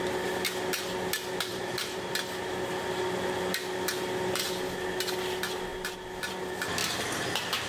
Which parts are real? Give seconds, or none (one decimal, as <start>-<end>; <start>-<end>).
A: 0.0-1.5; 2.1-7.7